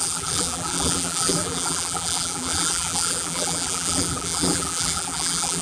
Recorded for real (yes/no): no